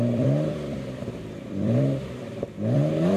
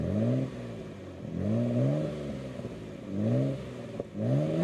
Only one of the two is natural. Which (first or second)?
second